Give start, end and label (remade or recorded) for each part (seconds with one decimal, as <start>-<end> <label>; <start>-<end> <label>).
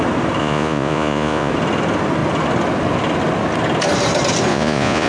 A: 0.0-0.4 recorded; 0.4-1.5 remade; 1.5-4.5 recorded; 4.5-5.1 remade